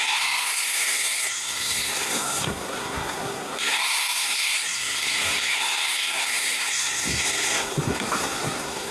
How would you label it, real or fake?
fake